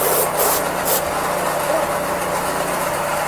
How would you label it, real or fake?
real